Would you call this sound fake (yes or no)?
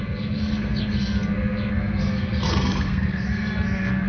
yes